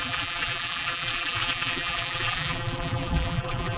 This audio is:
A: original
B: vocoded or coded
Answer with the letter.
B